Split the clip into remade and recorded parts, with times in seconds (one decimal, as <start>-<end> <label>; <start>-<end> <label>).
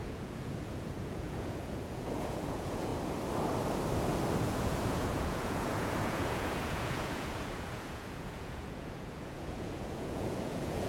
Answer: 0.0-2.9 remade; 2.9-4.4 recorded; 4.4-10.9 remade